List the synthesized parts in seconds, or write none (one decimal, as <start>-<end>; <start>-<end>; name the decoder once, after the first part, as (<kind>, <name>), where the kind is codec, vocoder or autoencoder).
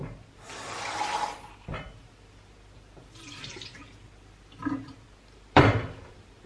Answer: 0.0-6.5 (vocoder, BigVGAN v2)